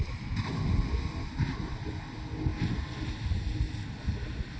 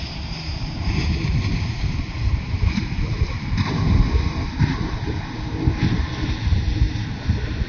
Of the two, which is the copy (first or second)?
second